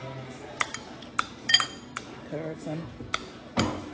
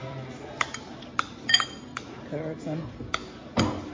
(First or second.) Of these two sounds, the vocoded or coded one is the second